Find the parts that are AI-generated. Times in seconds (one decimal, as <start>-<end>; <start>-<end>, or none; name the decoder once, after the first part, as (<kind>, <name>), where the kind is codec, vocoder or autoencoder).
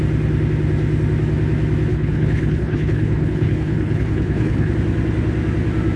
1.9-4.7 (codec, HILCodec)